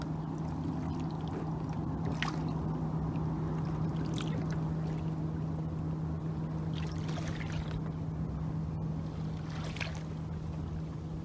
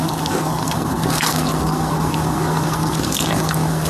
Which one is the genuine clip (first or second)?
first